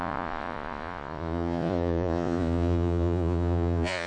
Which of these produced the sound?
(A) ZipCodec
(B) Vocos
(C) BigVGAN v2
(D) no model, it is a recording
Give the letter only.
B